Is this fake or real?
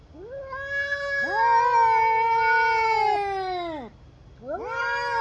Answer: real